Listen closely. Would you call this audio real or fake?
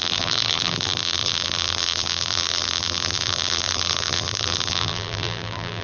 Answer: fake